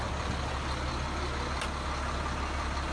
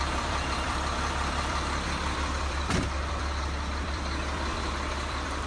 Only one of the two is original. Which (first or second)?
first